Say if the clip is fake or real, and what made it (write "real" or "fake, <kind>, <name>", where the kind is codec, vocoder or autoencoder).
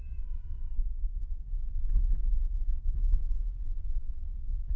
fake, vocoder, Vocos